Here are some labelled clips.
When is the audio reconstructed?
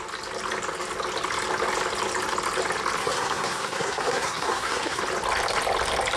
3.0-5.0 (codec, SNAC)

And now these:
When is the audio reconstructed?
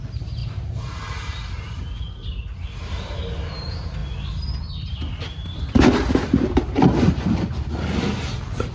none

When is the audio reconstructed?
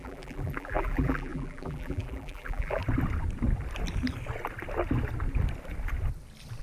0.0-2.8 (vocoder, BigVGAN v2)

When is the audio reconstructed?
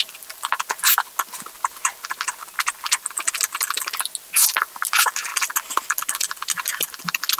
none